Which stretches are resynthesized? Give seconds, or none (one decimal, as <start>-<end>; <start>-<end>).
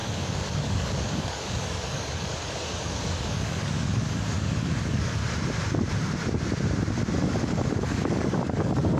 0.0-5.2; 7.2-9.0